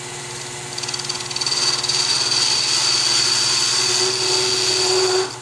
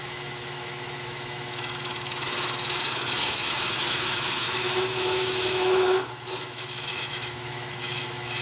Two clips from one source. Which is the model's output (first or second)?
second